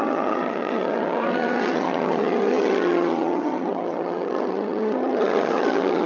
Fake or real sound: fake